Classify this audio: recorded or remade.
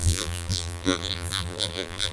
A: remade